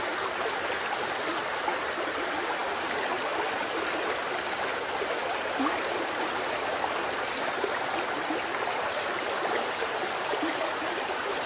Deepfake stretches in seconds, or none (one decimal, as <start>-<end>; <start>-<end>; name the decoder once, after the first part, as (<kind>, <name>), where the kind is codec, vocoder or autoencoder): none